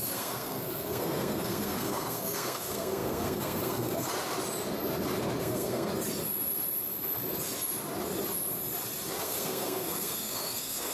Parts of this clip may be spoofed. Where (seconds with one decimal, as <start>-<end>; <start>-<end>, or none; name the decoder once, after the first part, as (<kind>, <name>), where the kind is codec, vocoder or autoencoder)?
0.0-4.1 (codec, SNAC); 5.4-5.9; 9.2-10.9